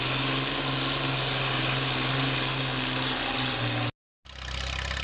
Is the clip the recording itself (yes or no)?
yes